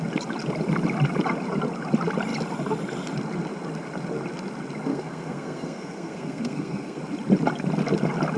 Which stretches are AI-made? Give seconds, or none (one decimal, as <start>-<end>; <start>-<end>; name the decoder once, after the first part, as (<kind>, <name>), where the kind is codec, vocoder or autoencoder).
4.9-7.0 (codec, SNAC)